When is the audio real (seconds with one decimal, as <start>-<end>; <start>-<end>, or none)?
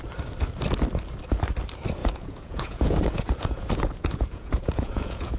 0.0-2.0